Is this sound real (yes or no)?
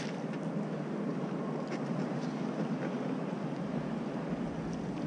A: yes